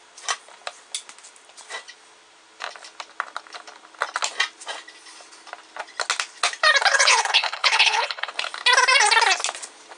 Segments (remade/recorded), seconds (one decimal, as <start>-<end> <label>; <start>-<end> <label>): 0.0-6.9 recorded; 6.9-8.3 remade; 8.3-10.0 recorded